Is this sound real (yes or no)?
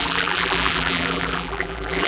no